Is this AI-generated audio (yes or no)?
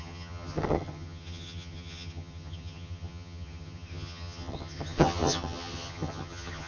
yes